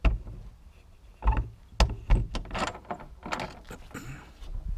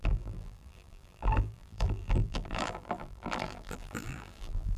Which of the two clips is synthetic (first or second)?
second